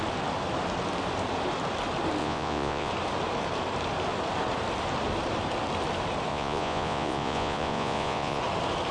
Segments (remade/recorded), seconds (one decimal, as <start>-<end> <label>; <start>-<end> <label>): 0.0-2.2 recorded; 2.2-2.9 remade; 2.9-6.3 recorded; 6.3-8.4 remade; 8.4-8.9 recorded